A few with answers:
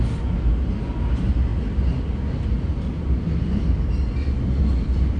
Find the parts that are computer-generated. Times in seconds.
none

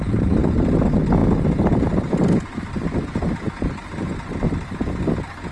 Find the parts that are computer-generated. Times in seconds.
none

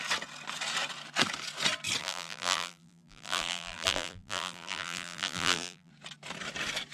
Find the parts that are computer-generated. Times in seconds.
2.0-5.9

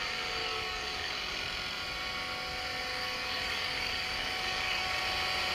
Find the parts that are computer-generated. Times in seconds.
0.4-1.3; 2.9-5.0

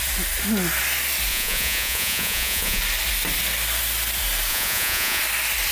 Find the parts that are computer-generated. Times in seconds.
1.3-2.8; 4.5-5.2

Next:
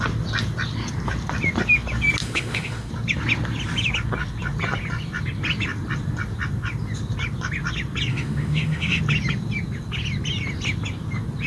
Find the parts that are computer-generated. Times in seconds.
2.2-2.9; 8.1-9.0

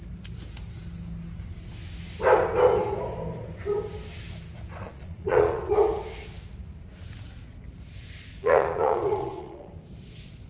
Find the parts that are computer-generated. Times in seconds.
4.8-5.7; 8.3-9.7